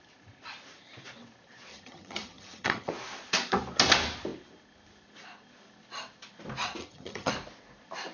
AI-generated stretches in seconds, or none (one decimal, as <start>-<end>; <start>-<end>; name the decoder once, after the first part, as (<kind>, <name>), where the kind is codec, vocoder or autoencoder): 1.7-2.9 (vocoder, HiFi-GAN); 6.8-7.3